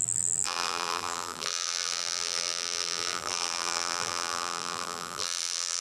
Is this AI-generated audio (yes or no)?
yes